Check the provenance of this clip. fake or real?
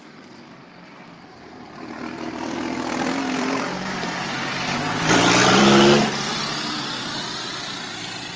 fake